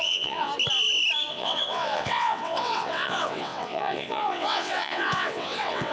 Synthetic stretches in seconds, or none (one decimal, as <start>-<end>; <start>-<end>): 0.0-0.5; 1.3-5.9

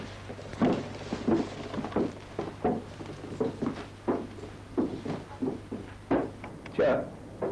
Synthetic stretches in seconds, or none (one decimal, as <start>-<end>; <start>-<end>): none

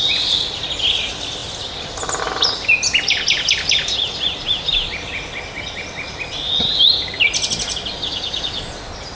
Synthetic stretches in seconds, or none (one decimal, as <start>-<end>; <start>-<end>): none

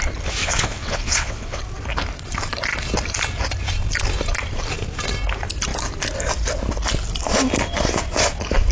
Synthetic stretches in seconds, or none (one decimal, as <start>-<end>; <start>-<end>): 0.4-1.6

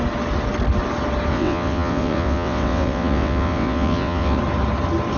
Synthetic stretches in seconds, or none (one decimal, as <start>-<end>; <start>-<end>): 1.3-4.4

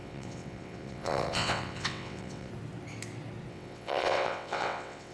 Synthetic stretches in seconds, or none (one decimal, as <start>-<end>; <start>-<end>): 0.0-2.5; 3.5-5.1

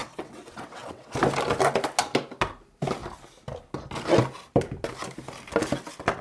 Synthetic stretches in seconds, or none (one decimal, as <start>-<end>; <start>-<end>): 0.0-1.1